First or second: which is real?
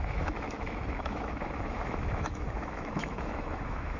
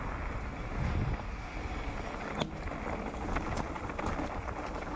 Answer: second